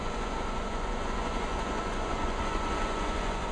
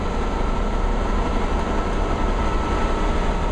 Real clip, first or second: second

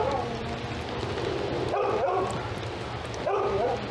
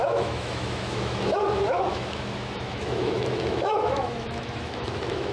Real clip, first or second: first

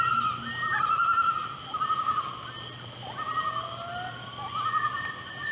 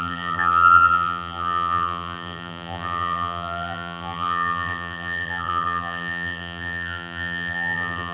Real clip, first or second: first